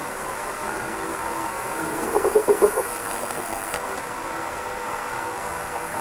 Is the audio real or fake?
fake